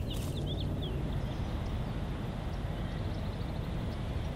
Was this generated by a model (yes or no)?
no